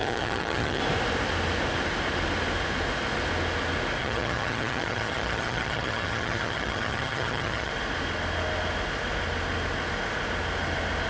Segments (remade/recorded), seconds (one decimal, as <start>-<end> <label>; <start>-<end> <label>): 0.0-0.8 remade; 0.8-4.0 recorded; 4.0-7.7 remade; 7.7-11.1 recorded

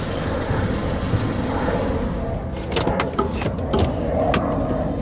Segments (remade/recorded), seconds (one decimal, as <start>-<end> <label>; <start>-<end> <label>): 0.0-5.0 recorded

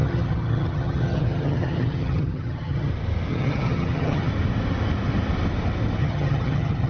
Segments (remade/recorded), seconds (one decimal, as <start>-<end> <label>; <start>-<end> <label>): 0.0-2.9 remade; 2.9-3.3 recorded; 3.3-4.3 remade; 4.3-6.0 recorded; 6.0-6.9 remade

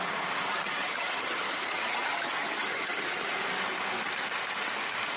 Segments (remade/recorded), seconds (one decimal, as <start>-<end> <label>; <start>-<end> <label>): 0.0-0.4 recorded; 0.4-3.3 remade; 3.3-5.2 recorded

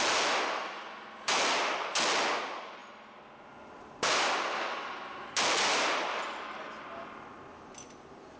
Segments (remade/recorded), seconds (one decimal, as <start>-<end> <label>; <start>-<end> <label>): 0.0-8.4 recorded

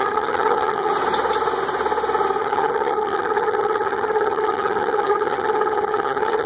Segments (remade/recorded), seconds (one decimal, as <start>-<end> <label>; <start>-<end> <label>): 0.0-0.9 remade; 0.9-2.4 recorded; 2.4-6.5 remade